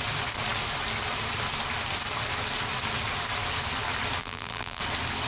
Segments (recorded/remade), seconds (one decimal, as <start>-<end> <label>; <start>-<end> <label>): 0.0-4.2 recorded; 4.2-4.8 remade; 4.8-5.3 recorded